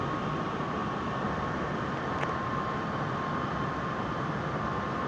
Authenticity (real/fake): real